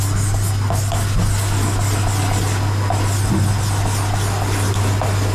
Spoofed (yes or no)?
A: no